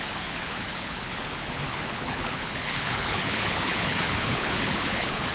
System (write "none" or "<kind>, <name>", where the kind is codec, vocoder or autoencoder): codec, HILCodec